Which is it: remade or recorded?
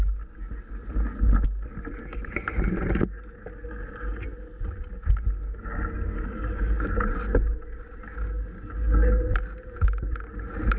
recorded